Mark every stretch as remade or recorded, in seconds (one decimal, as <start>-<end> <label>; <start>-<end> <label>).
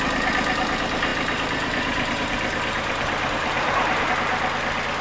0.0-1.1 recorded; 1.1-4.1 remade; 4.1-5.0 recorded